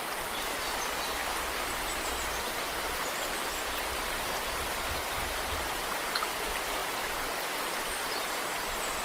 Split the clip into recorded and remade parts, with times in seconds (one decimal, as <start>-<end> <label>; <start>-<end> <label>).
0.0-9.0 recorded